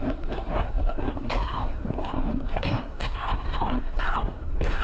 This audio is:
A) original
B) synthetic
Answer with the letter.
B